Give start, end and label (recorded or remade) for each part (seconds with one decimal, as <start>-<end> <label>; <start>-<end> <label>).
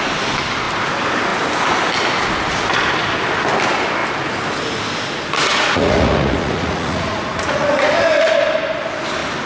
0.0-5.5 recorded; 5.5-7.8 remade; 7.8-9.5 recorded